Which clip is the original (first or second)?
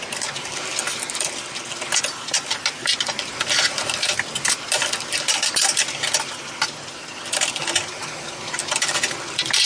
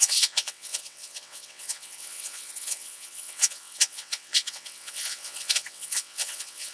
first